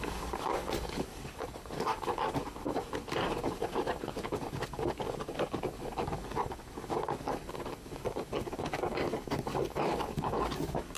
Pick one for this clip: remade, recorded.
remade